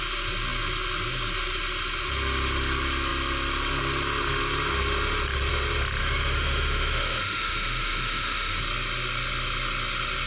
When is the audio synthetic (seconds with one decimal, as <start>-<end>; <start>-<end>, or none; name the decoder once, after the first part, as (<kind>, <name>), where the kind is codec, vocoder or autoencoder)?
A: 6.0-8.6 (autoencoder, DAC-VAE)